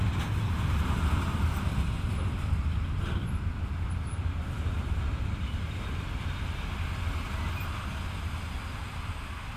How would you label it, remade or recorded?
recorded